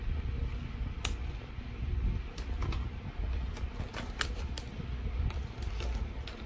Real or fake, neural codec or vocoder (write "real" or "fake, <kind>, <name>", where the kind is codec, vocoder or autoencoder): real